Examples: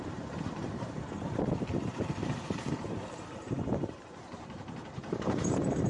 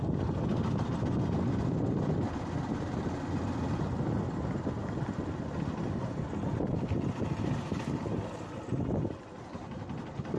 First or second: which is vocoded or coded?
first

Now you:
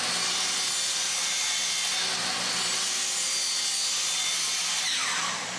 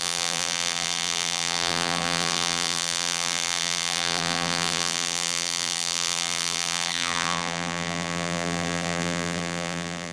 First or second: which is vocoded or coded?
second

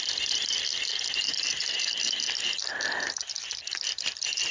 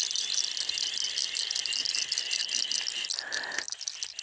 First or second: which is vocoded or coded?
first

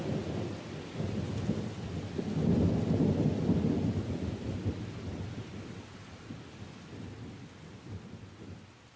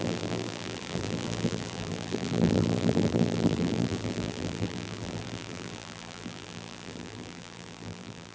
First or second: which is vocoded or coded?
second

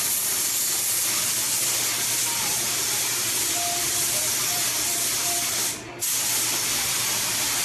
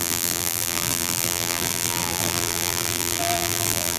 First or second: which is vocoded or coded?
second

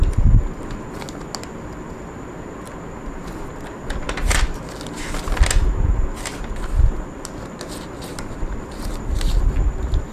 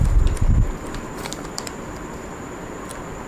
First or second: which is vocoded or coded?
second